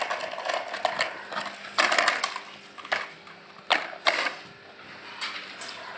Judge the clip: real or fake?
real